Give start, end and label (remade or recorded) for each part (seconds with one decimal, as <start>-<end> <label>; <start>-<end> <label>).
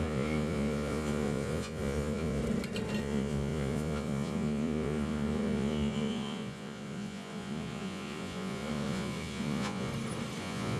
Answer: 0.0-2.4 remade; 2.4-3.0 recorded; 3.0-9.9 remade; 9.9-10.4 recorded; 10.4-10.8 remade